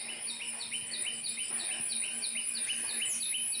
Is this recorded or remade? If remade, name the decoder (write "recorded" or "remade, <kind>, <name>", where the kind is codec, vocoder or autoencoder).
recorded